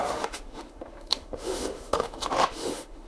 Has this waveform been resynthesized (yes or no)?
yes